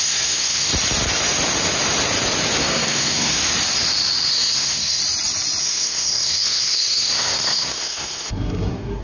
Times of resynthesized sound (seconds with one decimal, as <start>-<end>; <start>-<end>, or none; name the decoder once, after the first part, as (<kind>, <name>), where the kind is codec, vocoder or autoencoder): 0.0-0.7 (codec, SNAC); 2.6-3.4; 4.3-5.0; 5.6-9.0